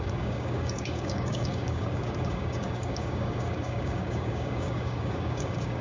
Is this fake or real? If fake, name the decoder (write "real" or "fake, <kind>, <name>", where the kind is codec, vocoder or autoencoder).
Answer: fake, codec, DAC